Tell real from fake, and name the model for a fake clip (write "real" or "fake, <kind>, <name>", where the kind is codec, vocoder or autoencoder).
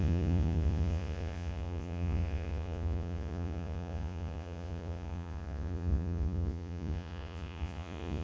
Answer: fake, vocoder, Vocos